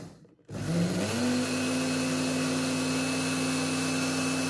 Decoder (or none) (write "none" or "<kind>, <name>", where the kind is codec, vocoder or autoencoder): none